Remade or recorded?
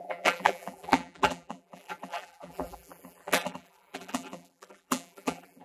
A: remade